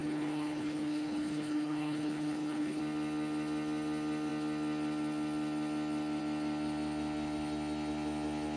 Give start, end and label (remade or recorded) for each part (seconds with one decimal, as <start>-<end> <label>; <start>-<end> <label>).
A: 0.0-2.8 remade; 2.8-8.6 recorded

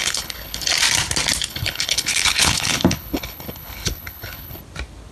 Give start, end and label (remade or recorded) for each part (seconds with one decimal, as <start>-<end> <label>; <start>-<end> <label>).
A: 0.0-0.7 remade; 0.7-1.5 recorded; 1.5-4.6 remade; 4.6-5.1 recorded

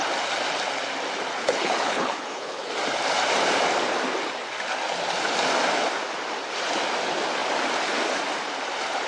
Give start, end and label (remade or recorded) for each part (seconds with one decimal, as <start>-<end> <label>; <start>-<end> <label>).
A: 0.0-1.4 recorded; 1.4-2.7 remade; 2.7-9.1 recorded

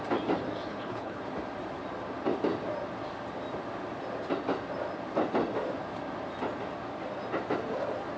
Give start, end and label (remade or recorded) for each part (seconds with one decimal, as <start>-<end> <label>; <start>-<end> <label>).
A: 0.0-0.7 recorded; 0.7-1.2 remade; 1.2-8.2 recorded

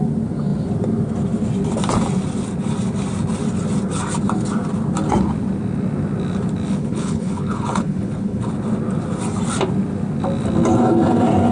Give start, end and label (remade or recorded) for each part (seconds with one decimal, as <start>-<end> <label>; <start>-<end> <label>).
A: 0.0-6.8 recorded; 6.8-8.5 remade; 8.5-11.5 recorded

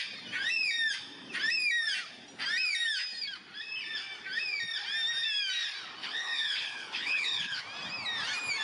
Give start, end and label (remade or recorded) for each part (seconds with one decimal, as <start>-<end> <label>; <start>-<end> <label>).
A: 0.0-6.0 recorded; 6.0-7.6 remade; 7.6-8.6 recorded

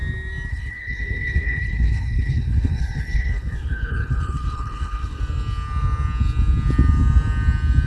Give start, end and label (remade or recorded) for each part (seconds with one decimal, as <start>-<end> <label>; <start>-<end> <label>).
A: 0.0-0.5 recorded; 0.5-5.2 remade; 5.2-7.9 recorded

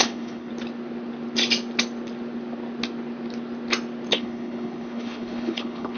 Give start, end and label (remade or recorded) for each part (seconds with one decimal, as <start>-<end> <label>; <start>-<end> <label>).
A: 0.0-0.5 remade; 0.5-4.1 recorded; 4.1-6.0 remade